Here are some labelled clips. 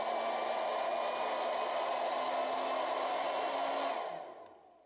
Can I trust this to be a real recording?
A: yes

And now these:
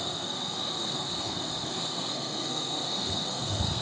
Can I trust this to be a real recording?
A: no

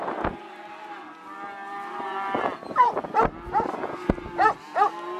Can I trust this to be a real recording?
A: yes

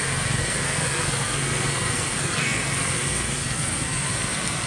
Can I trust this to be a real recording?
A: no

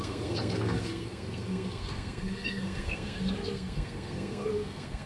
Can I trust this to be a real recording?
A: no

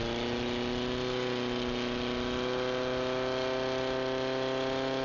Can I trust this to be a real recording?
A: yes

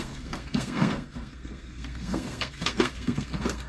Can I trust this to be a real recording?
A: no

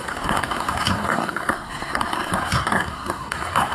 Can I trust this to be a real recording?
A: no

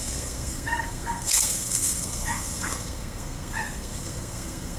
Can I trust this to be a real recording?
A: no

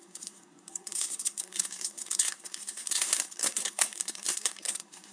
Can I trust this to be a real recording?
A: no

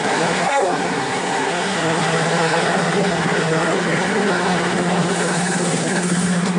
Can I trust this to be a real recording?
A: no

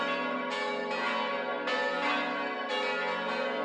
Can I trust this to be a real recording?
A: yes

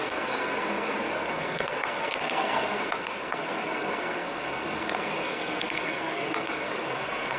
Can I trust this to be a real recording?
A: no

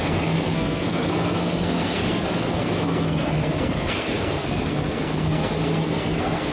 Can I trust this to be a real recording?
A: no